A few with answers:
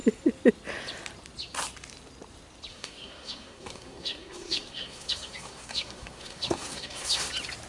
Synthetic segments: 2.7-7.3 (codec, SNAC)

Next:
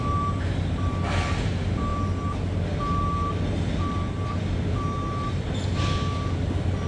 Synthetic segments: none

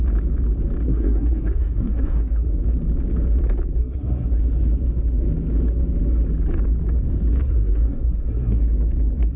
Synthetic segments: 0.9-2.5 (codec, SNAC); 3.8-4.4; 7.4-8.6

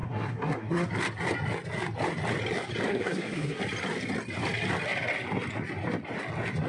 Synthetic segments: 0.0-0.9 (codec, SNAC); 2.9-3.6

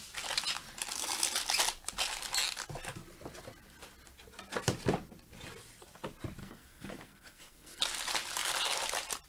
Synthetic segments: 6.4-7.8 (codec, SNAC)